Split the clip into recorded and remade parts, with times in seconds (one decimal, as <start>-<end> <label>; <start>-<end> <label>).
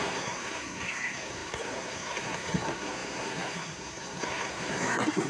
0.0-5.3 remade